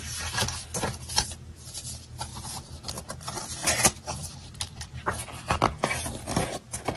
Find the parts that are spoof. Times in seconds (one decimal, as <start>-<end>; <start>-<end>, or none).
2.3-2.9; 3.6-5.2